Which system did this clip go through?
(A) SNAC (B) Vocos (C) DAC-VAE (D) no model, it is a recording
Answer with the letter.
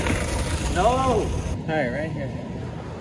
D